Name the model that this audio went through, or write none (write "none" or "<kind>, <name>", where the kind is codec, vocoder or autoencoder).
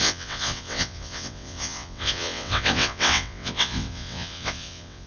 vocoder, WaveNeXt